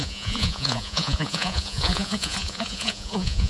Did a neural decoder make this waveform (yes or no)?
yes